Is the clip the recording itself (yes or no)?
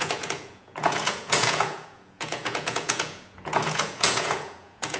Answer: no